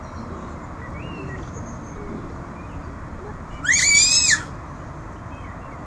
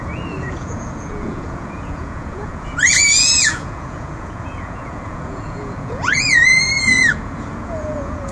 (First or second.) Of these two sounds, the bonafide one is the first